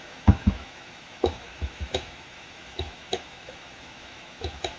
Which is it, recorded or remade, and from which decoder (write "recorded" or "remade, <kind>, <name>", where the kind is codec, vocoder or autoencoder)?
remade, autoencoder, DAC-VAE